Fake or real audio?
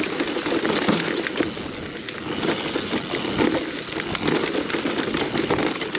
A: real